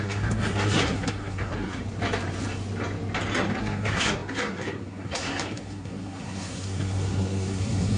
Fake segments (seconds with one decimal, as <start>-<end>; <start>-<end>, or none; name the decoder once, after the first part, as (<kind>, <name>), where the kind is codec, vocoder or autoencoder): 0.0-1.8 (codec, SNAC); 3.6-8.0